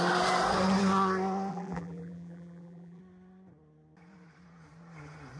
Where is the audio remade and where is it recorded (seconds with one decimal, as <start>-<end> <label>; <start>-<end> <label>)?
0.0-1.5 recorded; 1.5-3.0 remade; 3.0-5.4 recorded

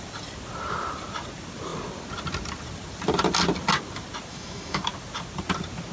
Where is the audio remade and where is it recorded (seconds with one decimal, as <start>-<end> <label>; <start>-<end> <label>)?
0.0-4.3 recorded; 4.3-4.8 remade; 4.8-5.9 recorded

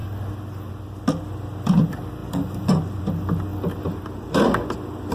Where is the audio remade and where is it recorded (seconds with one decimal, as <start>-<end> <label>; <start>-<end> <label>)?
0.0-2.2 recorded; 2.2-3.0 remade; 3.0-5.1 recorded

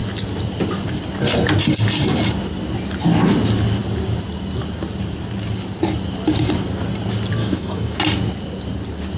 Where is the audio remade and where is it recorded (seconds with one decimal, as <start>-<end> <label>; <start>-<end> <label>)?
0.0-7.4 recorded; 7.4-8.0 remade; 8.0-9.2 recorded

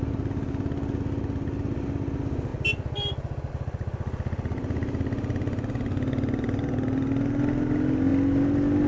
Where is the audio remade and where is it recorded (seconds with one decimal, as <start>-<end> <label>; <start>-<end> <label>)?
0.0-8.9 recorded